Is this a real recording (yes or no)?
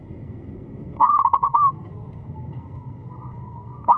no